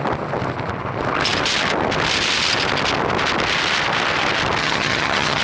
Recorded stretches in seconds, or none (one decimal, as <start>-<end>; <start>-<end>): 0.0-4.6